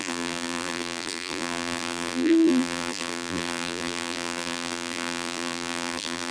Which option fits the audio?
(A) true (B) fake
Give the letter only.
B